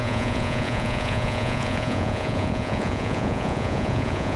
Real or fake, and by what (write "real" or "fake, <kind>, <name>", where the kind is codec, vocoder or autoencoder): fake, vocoder, Vocos